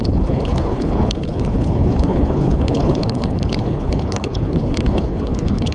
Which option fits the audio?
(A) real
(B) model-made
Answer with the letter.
B